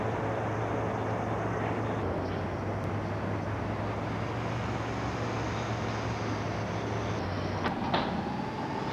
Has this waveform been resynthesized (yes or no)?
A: no